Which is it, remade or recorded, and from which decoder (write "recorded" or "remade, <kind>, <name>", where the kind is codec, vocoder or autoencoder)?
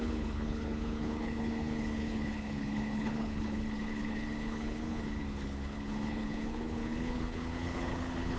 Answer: remade, codec, HILCodec